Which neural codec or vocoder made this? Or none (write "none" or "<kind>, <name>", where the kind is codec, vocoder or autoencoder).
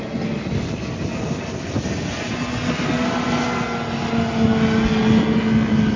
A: none